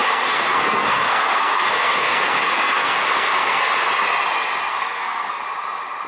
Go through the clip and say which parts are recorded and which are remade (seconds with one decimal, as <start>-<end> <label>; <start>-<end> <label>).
0.0-3.7 remade; 3.7-4.7 recorded; 4.7-5.4 remade; 5.4-6.1 recorded